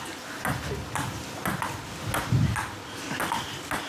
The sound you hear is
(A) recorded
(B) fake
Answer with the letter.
A